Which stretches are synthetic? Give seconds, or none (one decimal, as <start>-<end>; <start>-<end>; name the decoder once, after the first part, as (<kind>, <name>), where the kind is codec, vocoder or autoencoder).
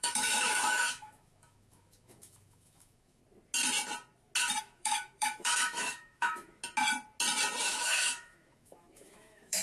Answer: 0.0-3.2 (autoencoder, DAC-VAE); 4.6-6.6; 7.6-9.6